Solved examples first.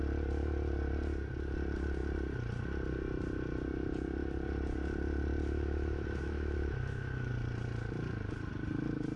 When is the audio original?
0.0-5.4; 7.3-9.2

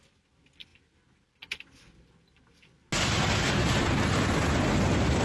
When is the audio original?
0.0-5.2